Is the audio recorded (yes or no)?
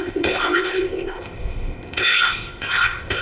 no